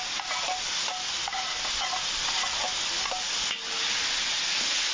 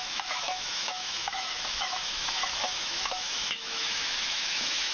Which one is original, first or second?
first